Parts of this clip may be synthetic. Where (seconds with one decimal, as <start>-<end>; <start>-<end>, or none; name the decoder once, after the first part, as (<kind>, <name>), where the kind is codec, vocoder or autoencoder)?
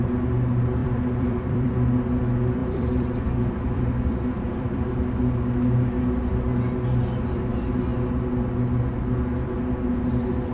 0.8-1.7 (vocoder, BigVGAN v2); 2.6-5.2